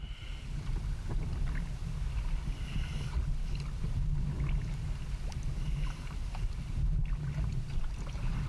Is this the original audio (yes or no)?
yes